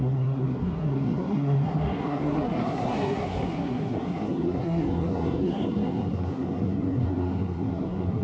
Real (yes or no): no